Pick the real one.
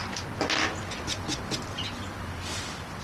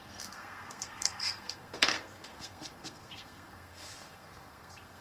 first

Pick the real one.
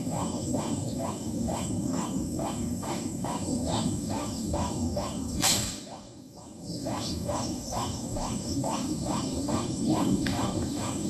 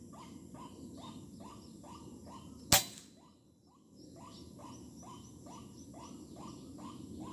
second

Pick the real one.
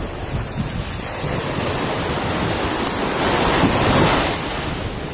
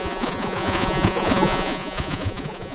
first